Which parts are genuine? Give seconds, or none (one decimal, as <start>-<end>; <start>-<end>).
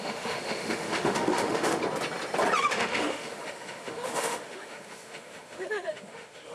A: 1.8-2.6